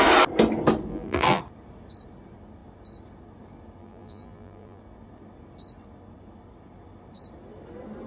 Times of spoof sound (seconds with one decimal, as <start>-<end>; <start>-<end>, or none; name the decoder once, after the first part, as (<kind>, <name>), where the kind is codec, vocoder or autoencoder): 0.9-1.4 (vocoder, BigVGAN v2); 3.8-4.8